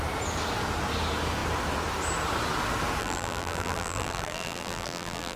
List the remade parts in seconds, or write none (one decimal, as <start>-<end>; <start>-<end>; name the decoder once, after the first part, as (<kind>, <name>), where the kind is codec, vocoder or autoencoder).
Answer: 3.0-5.4 (vocoder, BigVGAN v2)